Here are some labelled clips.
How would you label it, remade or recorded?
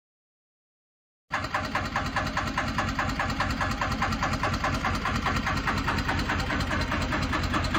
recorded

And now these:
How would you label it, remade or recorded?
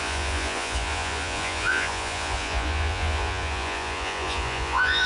remade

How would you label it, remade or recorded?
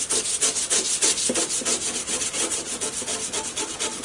recorded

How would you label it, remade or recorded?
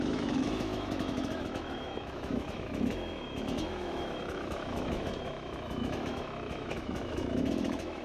remade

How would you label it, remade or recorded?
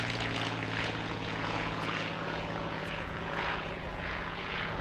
remade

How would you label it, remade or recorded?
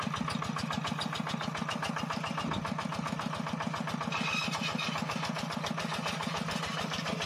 recorded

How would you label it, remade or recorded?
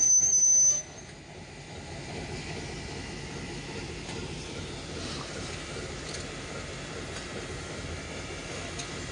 recorded